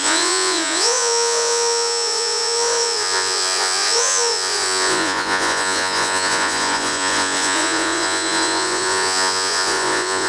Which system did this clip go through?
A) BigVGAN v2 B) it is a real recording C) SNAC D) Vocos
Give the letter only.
D